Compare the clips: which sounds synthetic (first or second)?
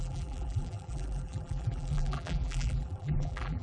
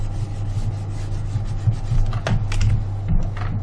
first